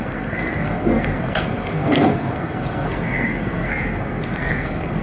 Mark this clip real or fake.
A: fake